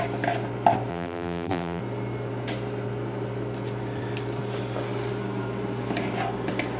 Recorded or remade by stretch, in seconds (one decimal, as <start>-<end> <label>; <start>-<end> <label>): 0.0-0.9 recorded; 0.9-1.8 remade; 1.8-6.8 recorded

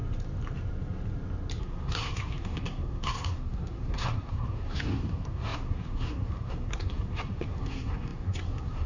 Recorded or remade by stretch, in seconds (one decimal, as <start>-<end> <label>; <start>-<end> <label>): 0.0-1.6 recorded; 1.6-8.9 remade

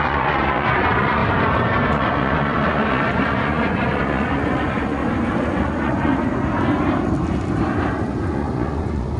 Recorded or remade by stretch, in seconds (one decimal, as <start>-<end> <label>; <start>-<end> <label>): 0.0-1.2 remade; 1.2-1.9 recorded; 1.9-5.0 remade; 5.0-5.6 recorded; 5.6-6.1 remade; 6.1-8.0 recorded; 8.0-9.2 remade

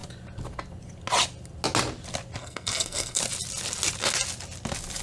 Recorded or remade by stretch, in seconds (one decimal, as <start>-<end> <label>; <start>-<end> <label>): 0.0-2.4 recorded; 2.4-3.2 remade; 3.2-5.0 recorded

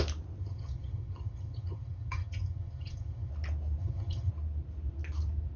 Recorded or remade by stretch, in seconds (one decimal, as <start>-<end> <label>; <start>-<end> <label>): 0.0-0.4 recorded; 0.4-3.3 remade; 3.3-3.8 recorded; 3.8-4.3 remade; 4.3-5.6 recorded

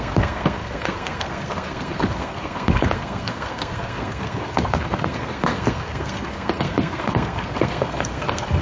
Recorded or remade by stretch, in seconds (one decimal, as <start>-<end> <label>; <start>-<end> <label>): 0.0-8.6 remade